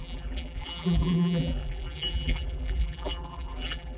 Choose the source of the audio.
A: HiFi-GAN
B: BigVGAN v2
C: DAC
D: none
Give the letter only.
B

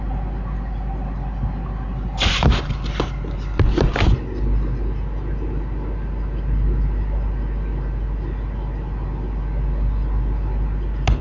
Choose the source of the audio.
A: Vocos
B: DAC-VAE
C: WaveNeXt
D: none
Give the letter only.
D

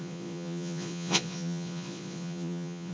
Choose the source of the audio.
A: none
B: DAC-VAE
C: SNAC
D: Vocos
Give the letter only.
D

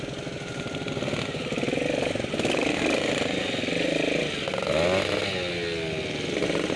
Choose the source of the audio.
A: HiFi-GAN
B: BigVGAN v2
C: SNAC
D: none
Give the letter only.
D